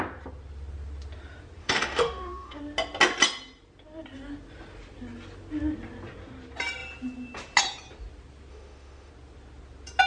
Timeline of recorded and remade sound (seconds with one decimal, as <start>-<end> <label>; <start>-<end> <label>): 0.0-1.6 recorded; 1.6-2.6 remade; 2.6-8.5 recorded; 8.5-9.1 remade; 9.1-10.1 recorded